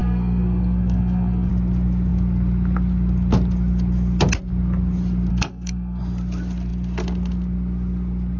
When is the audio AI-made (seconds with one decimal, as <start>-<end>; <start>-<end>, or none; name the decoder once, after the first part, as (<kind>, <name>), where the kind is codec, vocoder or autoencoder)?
0.0-1.5 (codec, SNAC); 5.3-6.0